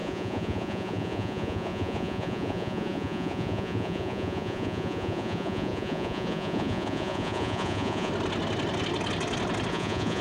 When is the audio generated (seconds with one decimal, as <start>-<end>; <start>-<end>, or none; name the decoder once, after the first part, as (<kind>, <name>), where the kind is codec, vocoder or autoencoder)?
0.0-8.1 (vocoder, Vocos); 9.7-10.2